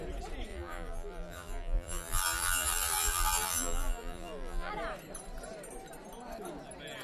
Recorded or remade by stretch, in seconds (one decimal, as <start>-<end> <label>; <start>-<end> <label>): 0.0-0.5 recorded; 0.5-4.7 remade; 4.7-7.0 recorded

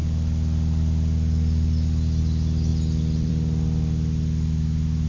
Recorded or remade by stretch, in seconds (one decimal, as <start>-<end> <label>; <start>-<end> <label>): 0.0-2.7 recorded; 2.7-3.3 remade; 3.3-5.1 recorded